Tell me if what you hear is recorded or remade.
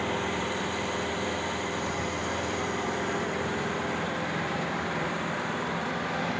remade